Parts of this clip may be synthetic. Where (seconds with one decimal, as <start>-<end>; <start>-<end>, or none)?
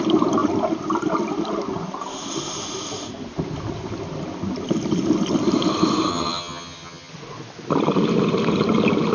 6.1-7.1